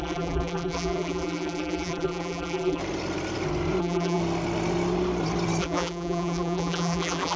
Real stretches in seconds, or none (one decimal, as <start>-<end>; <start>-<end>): 2.8-3.8; 4.2-5.6